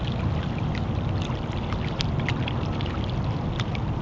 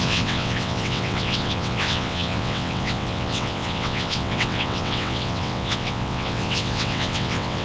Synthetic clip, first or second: second